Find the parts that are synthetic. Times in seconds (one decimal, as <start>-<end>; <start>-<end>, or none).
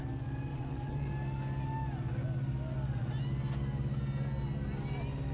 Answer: 0.5-1.1